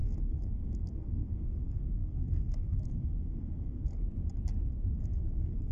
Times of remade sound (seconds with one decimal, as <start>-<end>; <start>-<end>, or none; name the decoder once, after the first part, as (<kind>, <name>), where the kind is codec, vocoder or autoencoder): 0.0-3.9 (codec, SNAC); 5.0-5.7